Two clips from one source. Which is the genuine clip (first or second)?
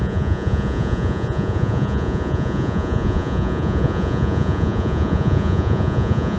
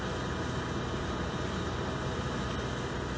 second